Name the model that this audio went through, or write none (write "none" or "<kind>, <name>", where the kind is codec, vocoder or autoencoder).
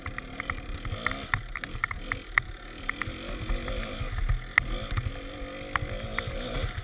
none